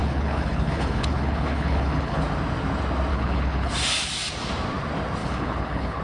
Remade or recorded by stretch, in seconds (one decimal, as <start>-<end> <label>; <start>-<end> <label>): 0.0-2.2 remade; 2.2-3.1 recorded; 3.1-3.7 remade; 3.7-5.2 recorded; 5.2-6.0 remade